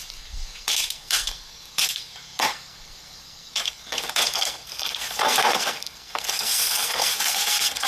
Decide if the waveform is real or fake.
fake